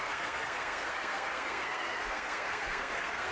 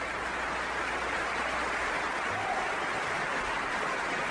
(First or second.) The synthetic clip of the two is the first